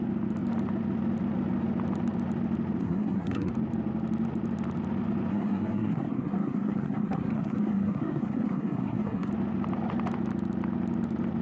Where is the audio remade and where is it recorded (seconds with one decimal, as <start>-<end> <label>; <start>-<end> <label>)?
0.0-2.8 recorded; 2.8-3.5 remade; 3.5-5.3 recorded; 5.3-9.3 remade; 9.3-11.4 recorded